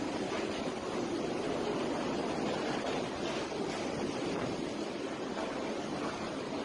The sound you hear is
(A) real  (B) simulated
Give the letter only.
A